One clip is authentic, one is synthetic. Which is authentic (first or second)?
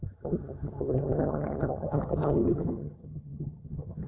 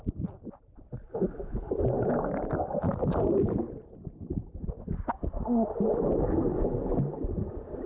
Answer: second